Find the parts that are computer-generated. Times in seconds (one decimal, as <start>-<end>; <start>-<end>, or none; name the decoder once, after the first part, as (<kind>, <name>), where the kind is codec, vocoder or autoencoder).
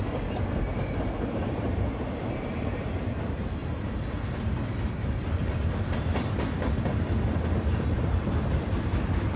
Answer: 0.0-9.4 (vocoder, BigVGAN v2)